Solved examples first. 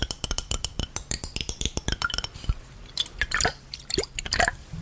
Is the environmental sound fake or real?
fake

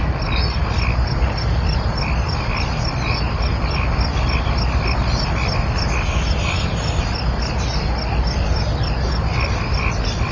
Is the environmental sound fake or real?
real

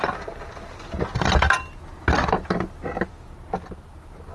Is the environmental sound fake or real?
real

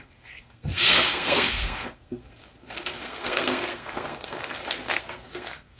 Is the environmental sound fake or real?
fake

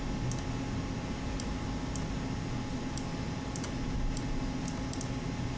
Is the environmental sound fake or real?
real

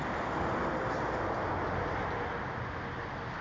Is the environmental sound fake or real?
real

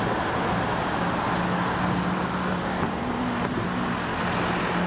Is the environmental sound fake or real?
real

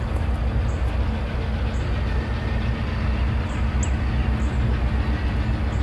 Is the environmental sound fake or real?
real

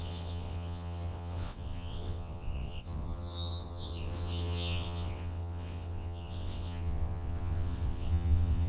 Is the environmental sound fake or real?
fake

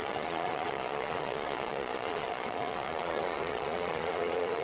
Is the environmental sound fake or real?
fake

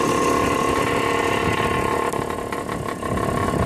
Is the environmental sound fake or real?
real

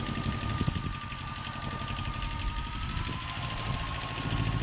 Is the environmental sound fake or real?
real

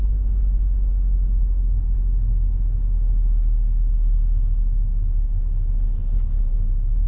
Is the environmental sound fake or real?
real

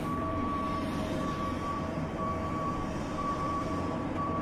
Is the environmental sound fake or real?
fake